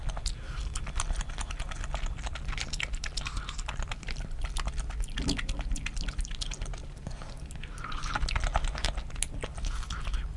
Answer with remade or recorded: recorded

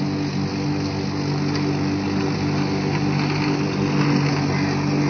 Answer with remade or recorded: recorded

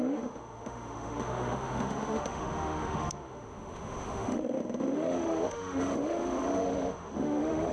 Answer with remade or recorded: remade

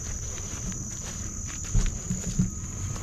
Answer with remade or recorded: remade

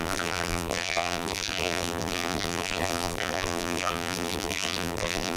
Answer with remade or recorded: remade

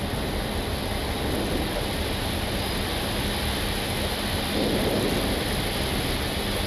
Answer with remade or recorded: recorded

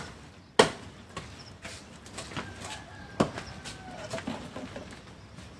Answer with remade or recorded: recorded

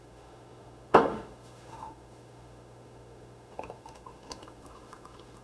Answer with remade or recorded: remade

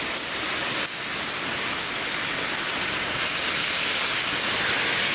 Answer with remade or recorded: recorded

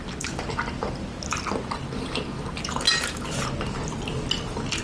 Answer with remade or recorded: recorded